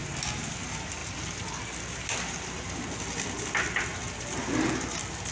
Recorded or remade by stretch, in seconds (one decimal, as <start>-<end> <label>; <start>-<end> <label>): 0.0-5.3 recorded